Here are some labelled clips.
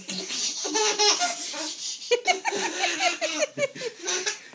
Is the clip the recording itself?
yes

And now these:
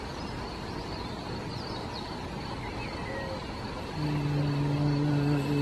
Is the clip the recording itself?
no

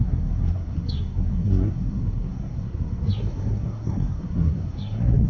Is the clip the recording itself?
no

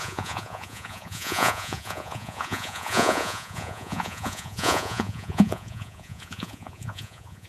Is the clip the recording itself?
no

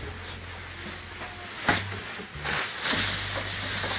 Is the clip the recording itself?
yes